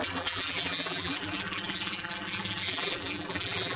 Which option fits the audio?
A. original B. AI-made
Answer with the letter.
B